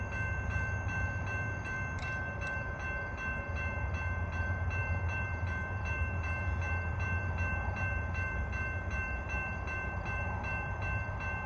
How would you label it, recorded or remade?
remade